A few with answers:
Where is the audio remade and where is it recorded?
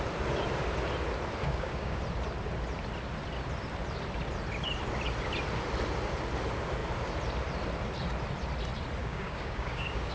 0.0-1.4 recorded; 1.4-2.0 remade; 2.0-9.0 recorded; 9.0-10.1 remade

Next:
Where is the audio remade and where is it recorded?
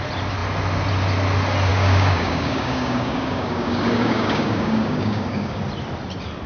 0.0-1.7 recorded; 1.7-5.6 remade; 5.6-6.5 recorded